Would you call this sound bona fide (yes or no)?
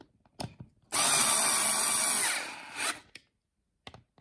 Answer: yes